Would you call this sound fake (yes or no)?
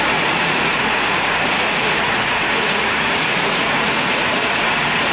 yes